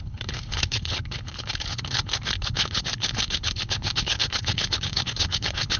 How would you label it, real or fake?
fake